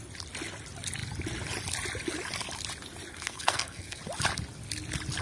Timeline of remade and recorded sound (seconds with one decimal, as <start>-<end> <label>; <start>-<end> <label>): 0.0-3.1 recorded; 3.1-4.0 remade; 4.0-5.2 recorded